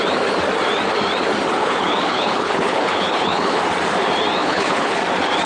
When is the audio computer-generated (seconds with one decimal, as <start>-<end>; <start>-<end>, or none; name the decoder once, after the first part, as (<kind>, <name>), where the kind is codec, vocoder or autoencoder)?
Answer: 1.6-3.6 (codec, HILCodec); 4.4-5.0